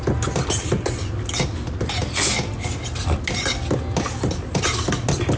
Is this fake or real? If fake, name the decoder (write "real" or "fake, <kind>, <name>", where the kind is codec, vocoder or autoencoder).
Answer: real